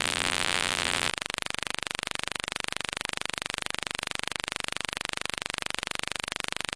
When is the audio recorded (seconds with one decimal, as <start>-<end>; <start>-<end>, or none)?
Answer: 1.1-6.8